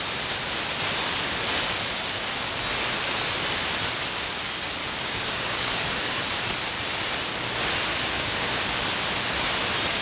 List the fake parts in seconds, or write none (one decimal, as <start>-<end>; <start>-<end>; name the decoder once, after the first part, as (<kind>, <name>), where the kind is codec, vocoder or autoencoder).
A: 4.8-6.2 (codec, DAC); 7.9-8.6